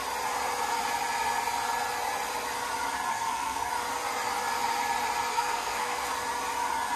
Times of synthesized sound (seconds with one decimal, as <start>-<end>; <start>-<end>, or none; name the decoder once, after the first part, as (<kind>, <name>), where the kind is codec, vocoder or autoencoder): 3.1-3.7 (codec, SNAC); 5.3-6.1